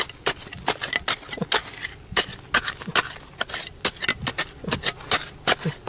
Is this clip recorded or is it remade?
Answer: recorded